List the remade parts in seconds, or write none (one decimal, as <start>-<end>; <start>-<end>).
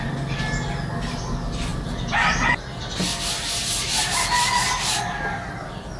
none